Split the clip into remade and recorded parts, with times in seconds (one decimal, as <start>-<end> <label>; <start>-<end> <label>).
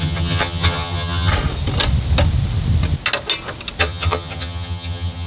0.0-1.3 remade; 1.3-3.8 recorded; 3.8-5.3 remade